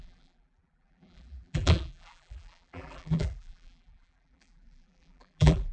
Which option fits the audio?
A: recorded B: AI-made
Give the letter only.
B